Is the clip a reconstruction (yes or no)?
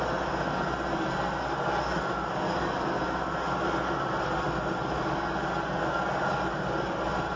no